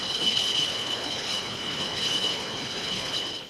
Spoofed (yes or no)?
yes